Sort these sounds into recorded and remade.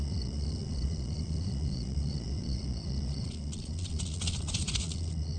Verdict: remade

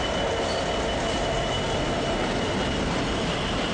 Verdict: recorded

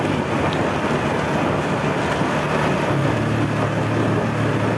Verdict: recorded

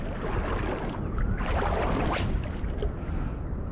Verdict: recorded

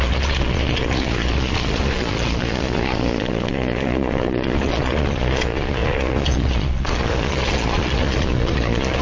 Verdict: remade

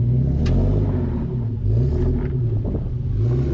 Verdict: recorded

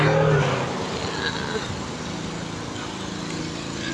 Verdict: recorded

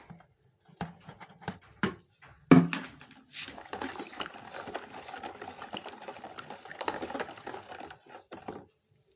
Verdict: recorded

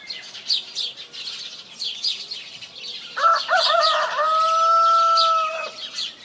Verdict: recorded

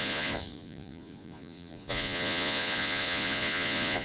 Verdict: remade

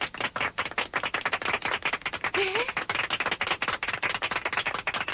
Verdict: recorded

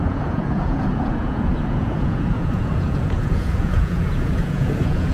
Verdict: remade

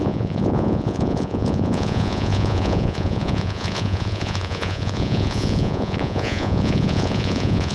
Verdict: remade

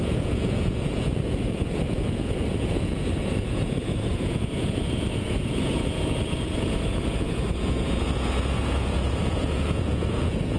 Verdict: remade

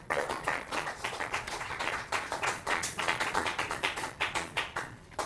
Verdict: remade